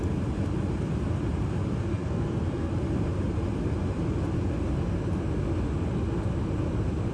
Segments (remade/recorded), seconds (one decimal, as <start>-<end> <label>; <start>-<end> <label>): 0.0-1.9 recorded; 1.9-2.7 remade; 2.7-7.1 recorded